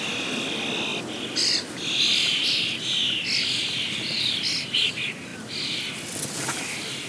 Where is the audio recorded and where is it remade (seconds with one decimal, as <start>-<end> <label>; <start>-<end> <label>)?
0.0-7.1 recorded